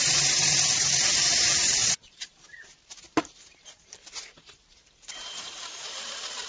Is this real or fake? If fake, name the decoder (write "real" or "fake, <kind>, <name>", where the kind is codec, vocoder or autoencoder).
fake, vocoder, BigVGAN v2